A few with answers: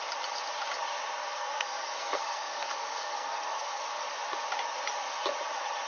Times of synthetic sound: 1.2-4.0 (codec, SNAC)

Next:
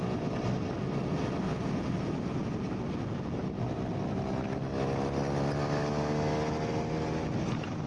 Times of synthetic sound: none

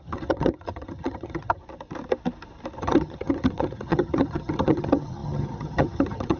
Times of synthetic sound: 0.0-1.6 (vocoder, HiFi-GAN); 2.8-6.4

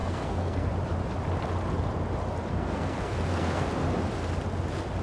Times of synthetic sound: 0.0-0.7 (codec, SNAC); 2.5-3.7

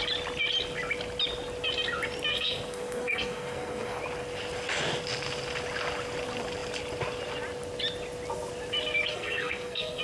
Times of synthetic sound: 2.3-4.0 (codec, SNAC); 9.1-10.0

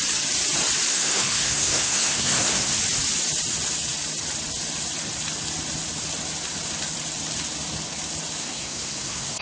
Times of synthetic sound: 0.9-2.8 (codec, SNAC); 8.4-9.4

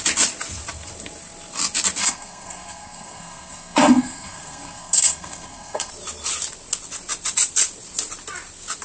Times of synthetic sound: 2.0-5.9 (codec, SNAC)

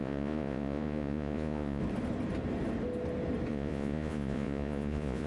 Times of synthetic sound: 0.0-1.8 (vocoder, Vocos); 3.5-5.3